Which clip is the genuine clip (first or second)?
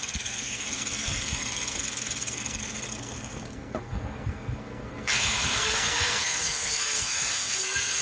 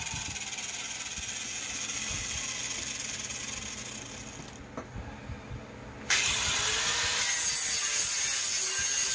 second